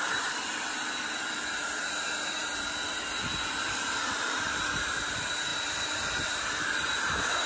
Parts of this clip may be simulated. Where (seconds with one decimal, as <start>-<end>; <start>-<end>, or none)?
0.0-7.5